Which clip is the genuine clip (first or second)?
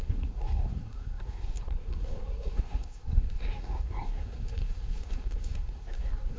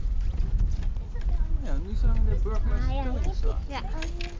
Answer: second